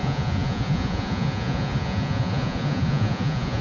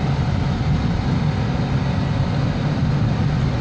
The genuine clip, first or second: second